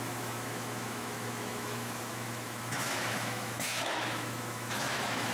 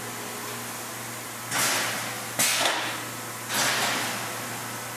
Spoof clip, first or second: first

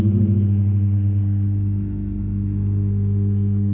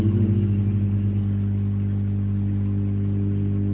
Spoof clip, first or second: first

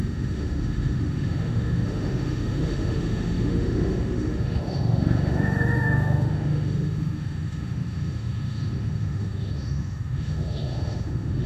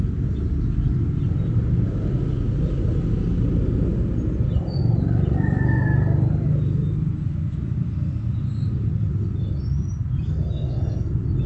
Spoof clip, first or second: first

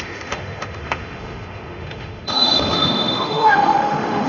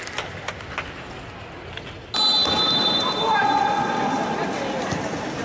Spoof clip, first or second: first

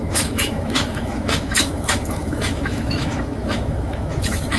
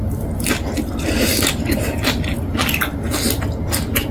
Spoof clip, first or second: first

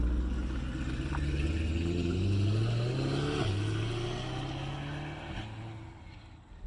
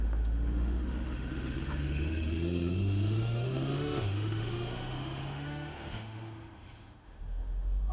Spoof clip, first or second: second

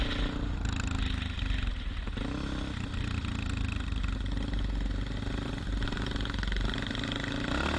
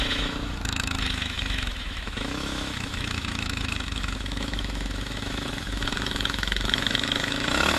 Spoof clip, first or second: second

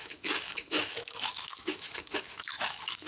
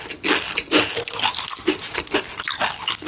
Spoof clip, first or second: first